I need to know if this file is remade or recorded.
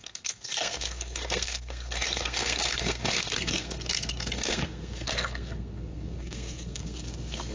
remade